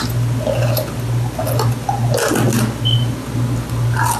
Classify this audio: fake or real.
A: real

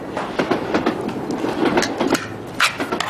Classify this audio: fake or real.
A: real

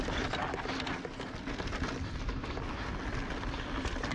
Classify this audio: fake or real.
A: real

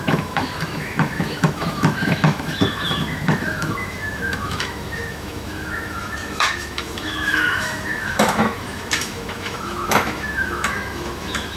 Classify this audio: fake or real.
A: fake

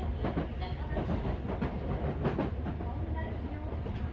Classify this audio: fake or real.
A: real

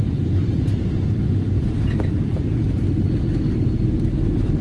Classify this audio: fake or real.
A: real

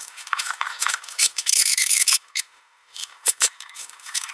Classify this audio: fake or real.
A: fake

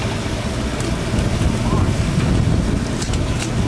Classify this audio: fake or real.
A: real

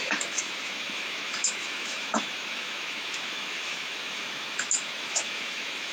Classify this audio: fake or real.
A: fake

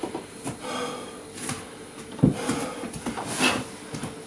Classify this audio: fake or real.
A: real